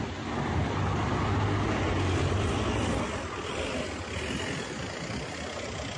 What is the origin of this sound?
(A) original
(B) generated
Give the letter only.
A